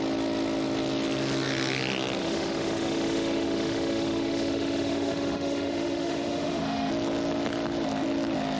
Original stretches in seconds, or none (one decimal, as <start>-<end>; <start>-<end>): 0.0-2.2; 6.9-8.6